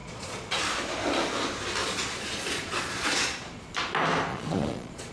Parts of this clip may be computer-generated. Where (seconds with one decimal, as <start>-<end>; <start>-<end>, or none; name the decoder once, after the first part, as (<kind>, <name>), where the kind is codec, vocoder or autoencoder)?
0.0-0.6 (vocoder, Vocos); 1.8-3.6; 4.3-5.1